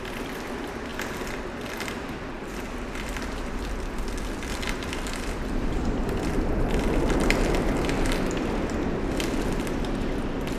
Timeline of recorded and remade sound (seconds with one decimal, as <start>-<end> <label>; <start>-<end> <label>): 0.0-10.6 remade